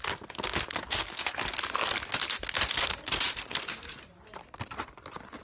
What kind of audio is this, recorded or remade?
recorded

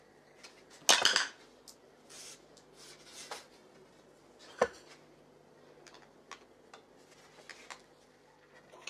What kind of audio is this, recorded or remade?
recorded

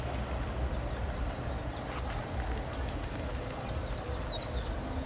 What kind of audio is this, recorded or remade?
recorded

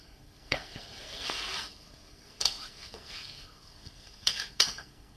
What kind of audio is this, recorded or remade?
remade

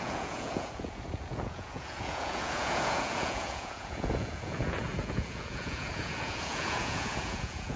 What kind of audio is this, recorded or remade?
remade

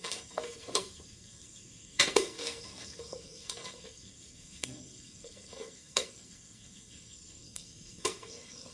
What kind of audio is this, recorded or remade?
remade